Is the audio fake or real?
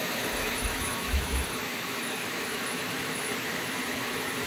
fake